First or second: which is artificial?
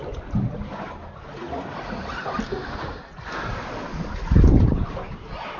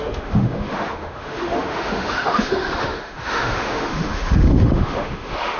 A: second